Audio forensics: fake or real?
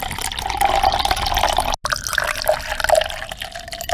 real